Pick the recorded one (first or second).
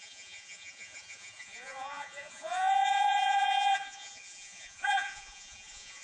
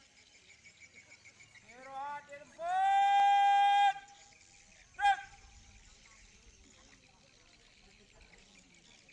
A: second